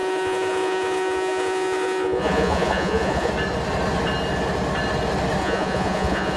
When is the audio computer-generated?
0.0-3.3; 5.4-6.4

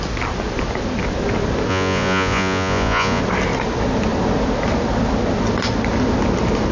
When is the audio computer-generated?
1.7-3.2

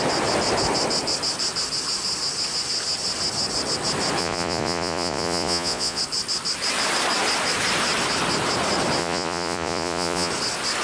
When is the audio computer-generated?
4.2-6.0; 9.0-10.3

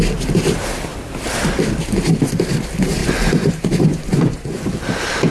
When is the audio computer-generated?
3.0-3.5; 3.9-4.7